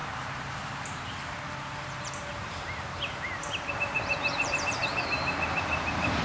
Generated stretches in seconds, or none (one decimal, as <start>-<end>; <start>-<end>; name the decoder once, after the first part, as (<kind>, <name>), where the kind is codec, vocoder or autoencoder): 0.0-6.2 (vocoder, BigVGAN v2)